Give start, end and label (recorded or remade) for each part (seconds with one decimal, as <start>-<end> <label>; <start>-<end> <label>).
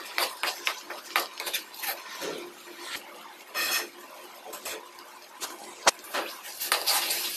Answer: 0.0-4.0 recorded; 4.0-6.7 remade; 6.7-7.4 recorded